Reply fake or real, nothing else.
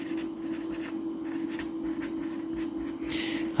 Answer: real